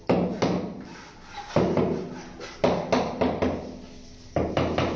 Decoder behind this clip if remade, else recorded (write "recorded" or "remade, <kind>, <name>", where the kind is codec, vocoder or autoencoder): recorded